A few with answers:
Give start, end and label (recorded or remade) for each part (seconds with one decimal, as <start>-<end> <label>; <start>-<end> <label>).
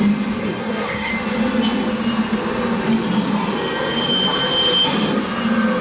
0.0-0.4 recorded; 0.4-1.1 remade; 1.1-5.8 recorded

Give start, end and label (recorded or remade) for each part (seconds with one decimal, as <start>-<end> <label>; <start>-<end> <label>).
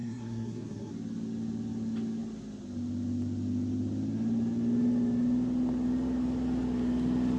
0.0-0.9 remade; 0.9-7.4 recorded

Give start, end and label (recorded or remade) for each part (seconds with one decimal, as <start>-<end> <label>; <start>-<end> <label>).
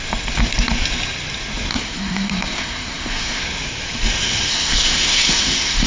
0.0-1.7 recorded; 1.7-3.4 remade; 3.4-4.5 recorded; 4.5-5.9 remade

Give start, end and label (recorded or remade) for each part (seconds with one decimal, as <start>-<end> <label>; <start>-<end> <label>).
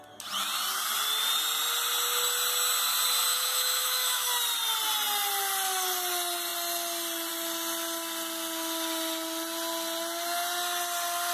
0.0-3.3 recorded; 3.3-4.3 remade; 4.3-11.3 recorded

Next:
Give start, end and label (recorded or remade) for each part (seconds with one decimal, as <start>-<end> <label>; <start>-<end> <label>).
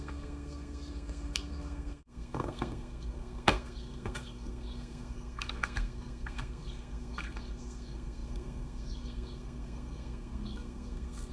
0.0-11.3 remade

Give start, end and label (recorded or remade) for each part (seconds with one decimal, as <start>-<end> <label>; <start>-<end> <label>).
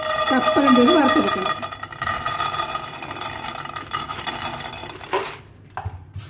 0.0-6.3 recorded